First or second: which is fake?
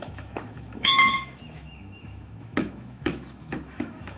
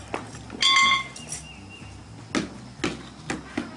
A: first